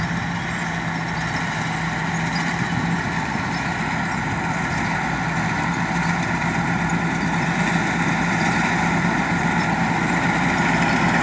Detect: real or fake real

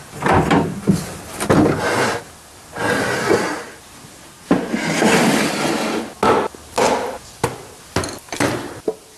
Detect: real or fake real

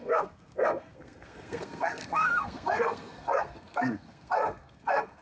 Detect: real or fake fake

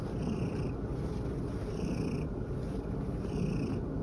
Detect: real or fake real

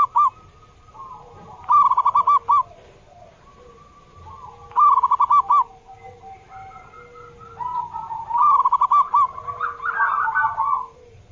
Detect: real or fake real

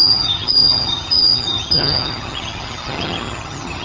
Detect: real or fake fake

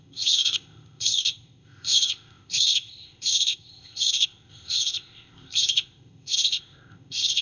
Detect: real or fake fake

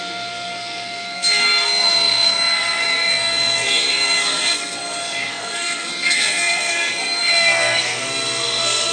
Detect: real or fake fake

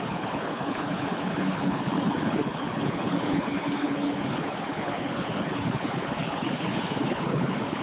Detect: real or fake fake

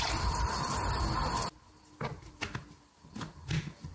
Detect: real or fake real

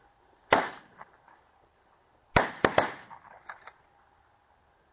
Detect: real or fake real